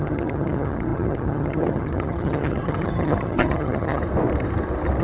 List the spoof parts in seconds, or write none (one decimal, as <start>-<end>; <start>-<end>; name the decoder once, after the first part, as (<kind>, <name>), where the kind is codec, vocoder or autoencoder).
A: 0.0-4.0 (vocoder, HiFi-GAN)